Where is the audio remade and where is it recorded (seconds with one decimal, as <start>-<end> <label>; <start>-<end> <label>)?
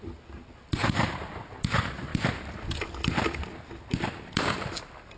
0.0-0.8 recorded; 0.8-1.3 remade; 1.3-5.2 recorded